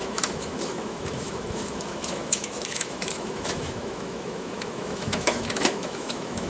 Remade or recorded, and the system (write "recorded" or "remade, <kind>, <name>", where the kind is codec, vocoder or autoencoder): remade, autoencoder, DAC-VAE